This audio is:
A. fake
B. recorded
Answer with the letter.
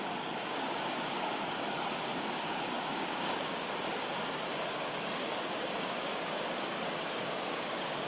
A